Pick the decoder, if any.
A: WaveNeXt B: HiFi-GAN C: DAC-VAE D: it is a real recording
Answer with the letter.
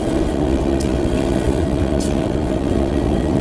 A